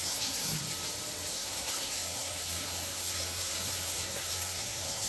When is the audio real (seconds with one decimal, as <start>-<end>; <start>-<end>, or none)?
0.6-1.3